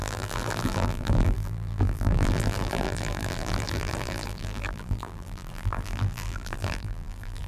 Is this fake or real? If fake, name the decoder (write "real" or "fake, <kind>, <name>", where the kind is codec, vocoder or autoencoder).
fake, vocoder, BigVGAN v2